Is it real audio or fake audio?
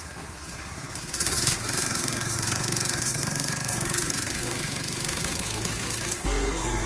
fake